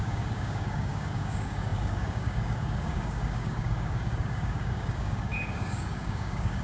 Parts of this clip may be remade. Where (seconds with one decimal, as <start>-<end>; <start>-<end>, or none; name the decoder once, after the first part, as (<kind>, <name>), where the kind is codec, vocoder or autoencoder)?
0.0-6.6 (codec, DAC)